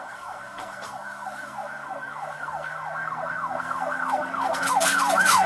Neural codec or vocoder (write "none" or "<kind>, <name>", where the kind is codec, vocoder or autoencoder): codec, SNAC